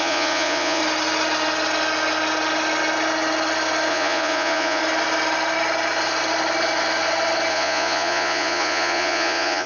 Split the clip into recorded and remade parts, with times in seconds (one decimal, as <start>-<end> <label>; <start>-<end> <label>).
0.0-0.8 remade; 0.8-3.9 recorded; 3.9-4.8 remade; 4.8-7.5 recorded; 7.5-9.7 remade